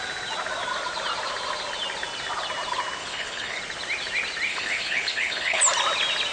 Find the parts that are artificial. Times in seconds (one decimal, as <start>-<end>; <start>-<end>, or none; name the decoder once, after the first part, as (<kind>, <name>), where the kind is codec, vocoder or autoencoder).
3.0-3.6 (codec, HILCodec); 4.5-5.6